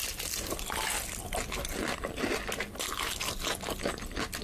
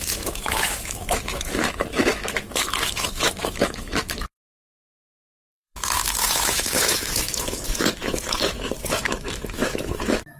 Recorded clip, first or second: first